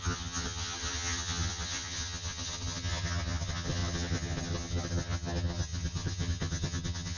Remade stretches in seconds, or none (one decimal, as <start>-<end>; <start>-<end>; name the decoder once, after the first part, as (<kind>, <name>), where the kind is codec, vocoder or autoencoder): 0.0-7.2 (vocoder, HiFi-GAN)